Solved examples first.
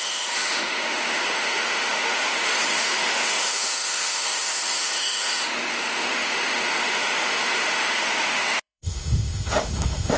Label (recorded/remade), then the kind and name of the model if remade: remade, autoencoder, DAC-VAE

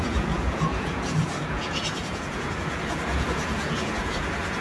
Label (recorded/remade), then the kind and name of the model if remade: remade, vocoder, Vocos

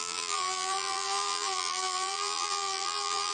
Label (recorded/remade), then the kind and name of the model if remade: remade, vocoder, BigVGAN v2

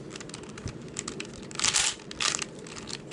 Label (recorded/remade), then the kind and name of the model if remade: recorded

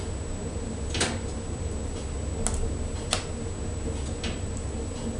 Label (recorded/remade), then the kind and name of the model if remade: recorded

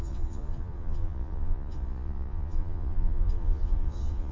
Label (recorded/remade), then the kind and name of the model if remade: remade, vocoder, Vocos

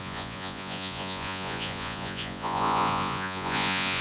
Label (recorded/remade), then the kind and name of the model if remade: remade, vocoder, Vocos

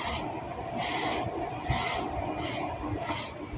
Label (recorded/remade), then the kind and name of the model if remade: recorded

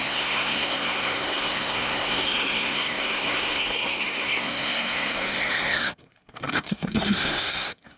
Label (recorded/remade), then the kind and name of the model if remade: remade, codec, SNAC